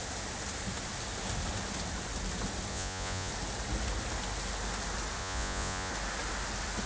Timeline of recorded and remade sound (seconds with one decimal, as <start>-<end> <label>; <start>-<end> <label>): 0.0-2.7 recorded; 2.7-3.3 remade; 3.3-5.2 recorded; 5.2-5.9 remade; 5.9-6.9 recorded